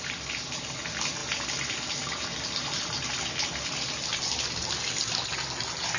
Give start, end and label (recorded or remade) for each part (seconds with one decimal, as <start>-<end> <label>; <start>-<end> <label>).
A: 0.0-6.0 recorded